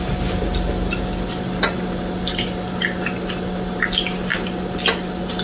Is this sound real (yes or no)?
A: yes